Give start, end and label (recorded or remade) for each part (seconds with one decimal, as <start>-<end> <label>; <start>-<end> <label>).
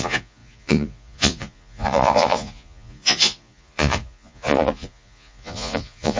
0.0-6.2 remade